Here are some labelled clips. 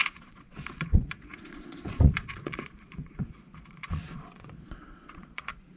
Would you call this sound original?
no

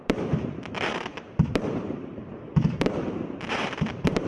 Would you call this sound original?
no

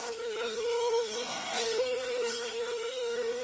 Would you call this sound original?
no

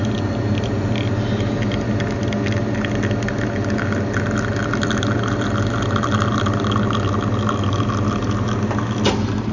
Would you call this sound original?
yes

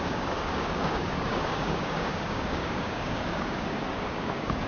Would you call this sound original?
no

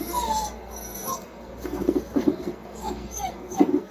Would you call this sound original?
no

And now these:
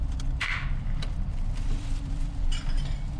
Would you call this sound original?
no